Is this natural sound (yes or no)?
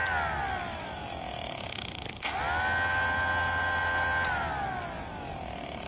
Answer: yes